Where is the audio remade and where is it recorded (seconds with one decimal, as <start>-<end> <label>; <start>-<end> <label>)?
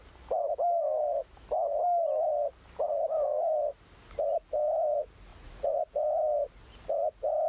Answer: 0.0-5.3 recorded; 5.3-5.9 remade; 5.9-7.5 recorded